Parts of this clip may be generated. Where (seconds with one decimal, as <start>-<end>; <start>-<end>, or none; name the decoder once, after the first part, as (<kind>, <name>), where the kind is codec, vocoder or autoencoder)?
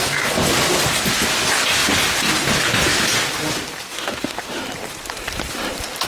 3.9-4.6 (autoencoder, DAC-VAE)